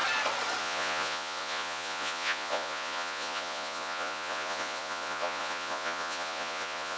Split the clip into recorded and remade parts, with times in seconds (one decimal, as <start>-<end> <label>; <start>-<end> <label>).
0.0-0.6 recorded; 0.6-7.0 remade